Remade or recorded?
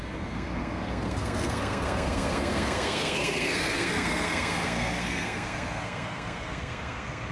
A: remade